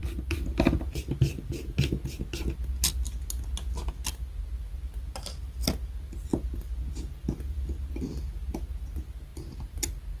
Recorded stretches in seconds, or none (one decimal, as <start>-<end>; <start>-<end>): 0.0-10.2